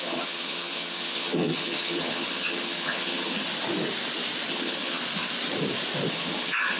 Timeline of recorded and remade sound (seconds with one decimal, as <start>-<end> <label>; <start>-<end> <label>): 0.0-3.3 remade; 3.3-4.5 recorded; 4.5-5.0 remade; 5.0-6.1 recorded; 6.1-6.8 remade